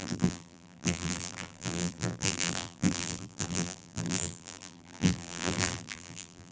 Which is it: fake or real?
fake